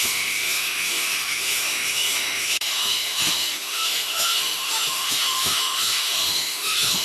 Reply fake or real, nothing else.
fake